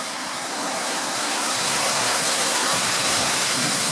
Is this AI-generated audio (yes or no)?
yes